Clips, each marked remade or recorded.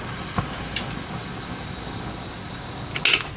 recorded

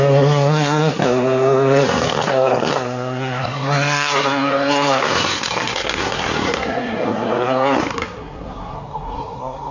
remade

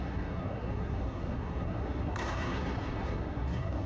remade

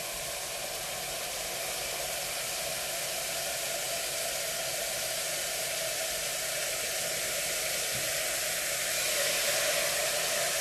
recorded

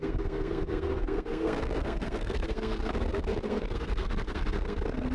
remade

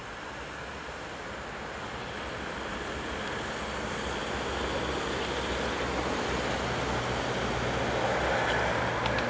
recorded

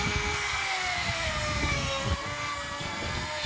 remade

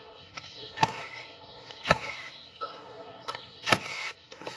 remade